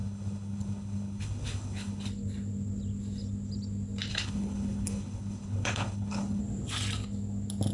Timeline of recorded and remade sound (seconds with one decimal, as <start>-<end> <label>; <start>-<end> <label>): 0.0-2.1 remade; 2.1-4.1 recorded; 4.1-6.4 remade; 6.4-7.7 recorded